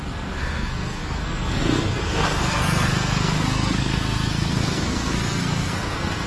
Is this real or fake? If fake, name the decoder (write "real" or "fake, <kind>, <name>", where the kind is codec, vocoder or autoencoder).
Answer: fake, codec, SNAC